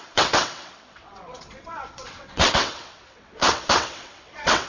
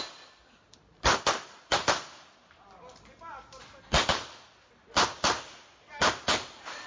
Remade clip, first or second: first